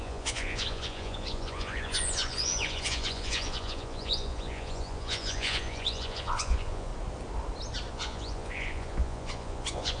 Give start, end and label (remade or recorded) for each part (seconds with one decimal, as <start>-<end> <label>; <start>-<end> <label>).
0.0-6.9 remade; 6.9-7.9 recorded; 7.9-10.0 remade